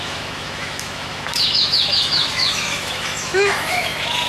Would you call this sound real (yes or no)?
no